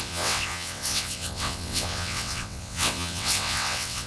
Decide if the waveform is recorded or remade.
remade